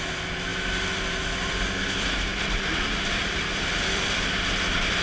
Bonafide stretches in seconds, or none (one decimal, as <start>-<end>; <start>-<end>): 0.0-2.3; 4.4-5.0